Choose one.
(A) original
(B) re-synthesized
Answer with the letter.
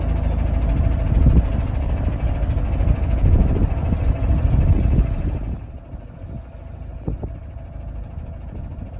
A